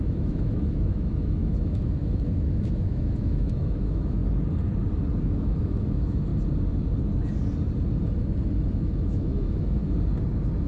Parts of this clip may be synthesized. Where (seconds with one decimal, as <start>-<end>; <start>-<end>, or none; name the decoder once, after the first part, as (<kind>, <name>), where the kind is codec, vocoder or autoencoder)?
0.0-4.2 (autoencoder, DAC-VAE); 5.2-6.3; 8.7-9.8